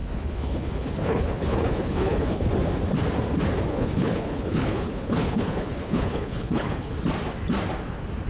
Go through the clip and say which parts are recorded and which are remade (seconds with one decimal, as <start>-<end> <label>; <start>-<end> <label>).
0.0-2.5 remade; 2.5-3.7 recorded; 3.7-6.9 remade; 6.9-8.3 recorded